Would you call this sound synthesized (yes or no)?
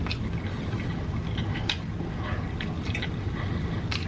no